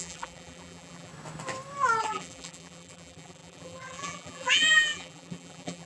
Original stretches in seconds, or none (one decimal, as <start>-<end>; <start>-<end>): 1.1-2.0